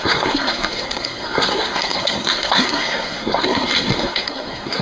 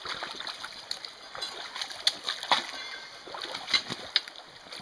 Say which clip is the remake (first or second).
first